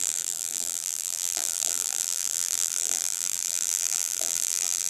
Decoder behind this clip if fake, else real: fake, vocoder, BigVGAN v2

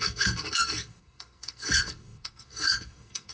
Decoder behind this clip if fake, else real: fake, codec, SNAC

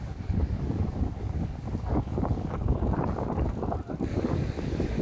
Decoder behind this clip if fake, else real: fake, codec, DAC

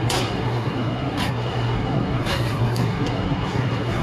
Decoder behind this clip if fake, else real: fake, codec, SNAC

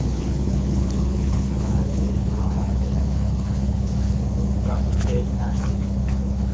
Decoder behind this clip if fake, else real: fake, codec, HILCodec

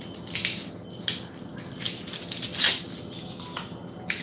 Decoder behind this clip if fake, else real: real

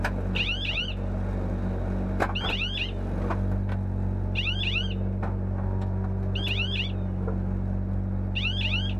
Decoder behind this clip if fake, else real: real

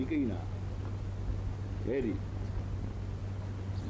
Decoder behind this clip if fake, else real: real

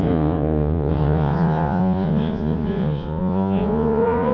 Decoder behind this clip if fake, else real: fake, vocoder, Vocos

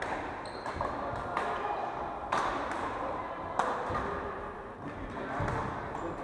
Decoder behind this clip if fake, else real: real